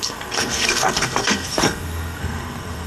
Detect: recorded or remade remade